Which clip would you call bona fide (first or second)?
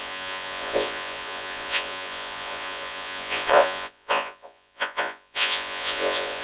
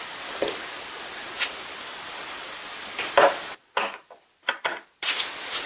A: second